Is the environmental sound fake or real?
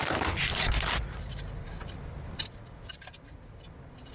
real